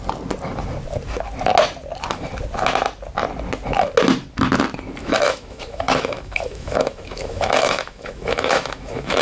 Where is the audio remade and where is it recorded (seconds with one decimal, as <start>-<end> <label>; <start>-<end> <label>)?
0.0-5.0 recorded; 5.0-9.2 remade